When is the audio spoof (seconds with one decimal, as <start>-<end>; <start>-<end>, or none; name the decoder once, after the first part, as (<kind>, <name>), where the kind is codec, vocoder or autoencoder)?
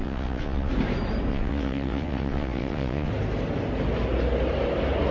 0.0-0.7 (vocoder, WaveNeXt); 1.3-3.1